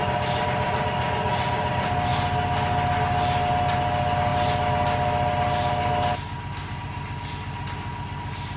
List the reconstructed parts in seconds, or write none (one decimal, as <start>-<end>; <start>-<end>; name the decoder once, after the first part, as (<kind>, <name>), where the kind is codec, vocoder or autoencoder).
none